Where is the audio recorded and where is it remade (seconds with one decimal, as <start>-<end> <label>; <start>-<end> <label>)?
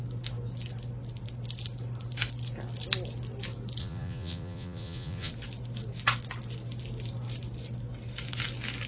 0.0-3.8 recorded; 3.8-5.3 remade; 5.3-8.9 recorded